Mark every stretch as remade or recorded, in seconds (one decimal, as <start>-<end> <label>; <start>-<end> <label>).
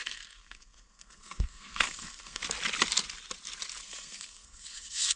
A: 0.0-2.4 remade; 2.4-3.8 recorded; 3.8-5.2 remade